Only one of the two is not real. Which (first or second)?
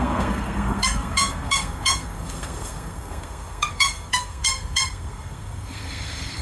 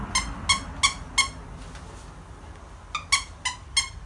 first